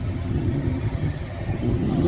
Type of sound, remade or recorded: remade